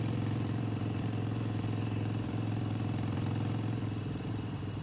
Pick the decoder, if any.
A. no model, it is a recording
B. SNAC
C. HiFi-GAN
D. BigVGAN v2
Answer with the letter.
D